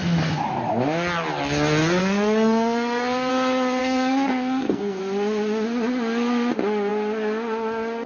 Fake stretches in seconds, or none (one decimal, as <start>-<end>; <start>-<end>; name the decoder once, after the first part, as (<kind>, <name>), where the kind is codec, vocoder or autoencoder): 2.0-3.3 (codec, SNAC); 3.8-5.0